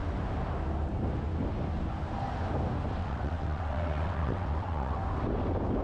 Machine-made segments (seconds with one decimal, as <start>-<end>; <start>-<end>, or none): 3.0-5.0